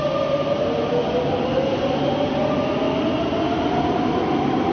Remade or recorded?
recorded